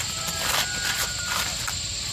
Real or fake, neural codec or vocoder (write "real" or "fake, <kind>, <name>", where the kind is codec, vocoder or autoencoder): real